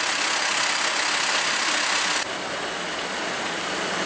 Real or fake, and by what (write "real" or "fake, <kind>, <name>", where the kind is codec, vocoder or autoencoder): real